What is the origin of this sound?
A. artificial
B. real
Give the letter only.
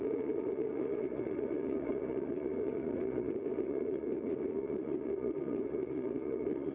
A